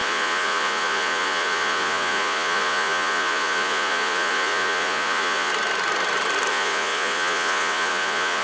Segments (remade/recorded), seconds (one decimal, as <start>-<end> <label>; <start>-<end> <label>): 0.0-5.5 remade; 5.5-6.5 recorded; 6.5-8.4 remade